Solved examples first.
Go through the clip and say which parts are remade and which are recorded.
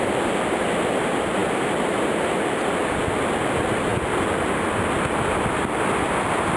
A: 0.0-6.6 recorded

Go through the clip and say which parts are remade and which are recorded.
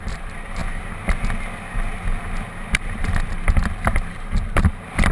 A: 0.0-0.6 remade; 0.6-3.4 recorded; 3.4-5.1 remade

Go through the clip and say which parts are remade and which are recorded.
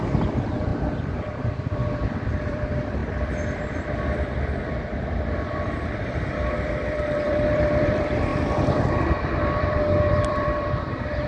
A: 0.0-0.7 remade; 0.7-1.2 recorded; 1.2-11.3 remade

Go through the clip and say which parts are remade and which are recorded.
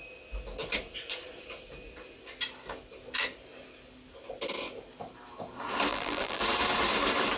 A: 0.0-5.9 recorded; 5.9-6.4 remade; 6.4-7.4 recorded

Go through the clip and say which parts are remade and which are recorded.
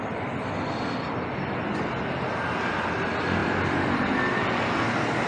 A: 0.0-5.3 recorded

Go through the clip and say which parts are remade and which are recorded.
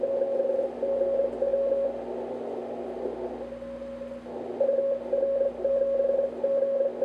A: 0.0-7.0 recorded